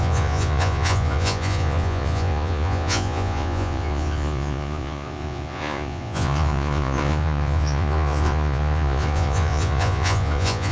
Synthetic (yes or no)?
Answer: yes